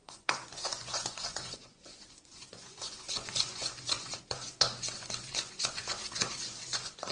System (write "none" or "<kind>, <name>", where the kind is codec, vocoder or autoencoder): vocoder, Vocos